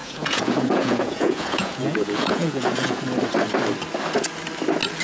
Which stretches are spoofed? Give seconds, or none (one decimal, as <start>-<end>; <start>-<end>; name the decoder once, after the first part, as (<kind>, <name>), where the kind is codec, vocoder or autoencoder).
0.0-3.0 (vocoder, Vocos)